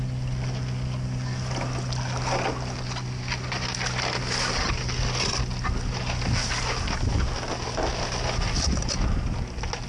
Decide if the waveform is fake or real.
real